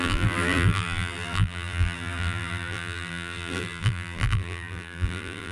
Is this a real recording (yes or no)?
no